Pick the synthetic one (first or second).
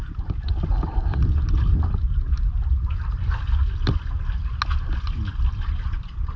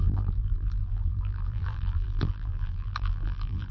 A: second